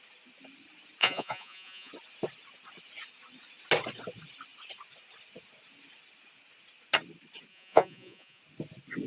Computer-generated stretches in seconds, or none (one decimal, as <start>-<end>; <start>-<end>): 1.0-1.9; 7.5-8.4